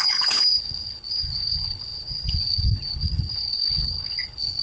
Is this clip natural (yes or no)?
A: no